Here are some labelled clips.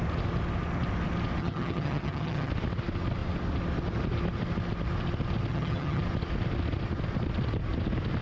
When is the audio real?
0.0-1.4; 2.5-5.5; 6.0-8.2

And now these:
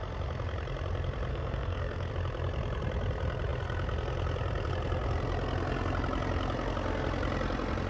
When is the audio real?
0.0-1.3; 2.1-7.9

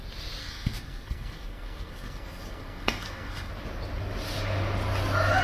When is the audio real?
0.0-0.4; 3.5-5.4

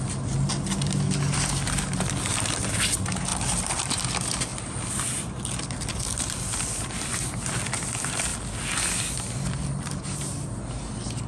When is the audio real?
0.0-3.3; 3.9-4.5; 6.4-11.3

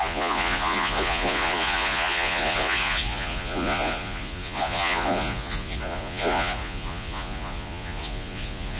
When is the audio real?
none

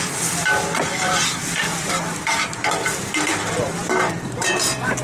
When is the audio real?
0.0-1.7

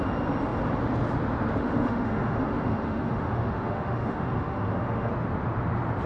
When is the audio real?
0.0-1.6; 5.1-6.1